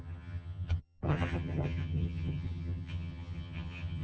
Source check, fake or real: fake